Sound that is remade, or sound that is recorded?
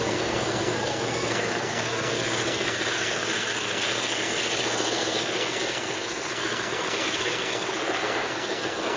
remade